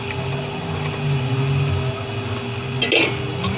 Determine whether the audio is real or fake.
real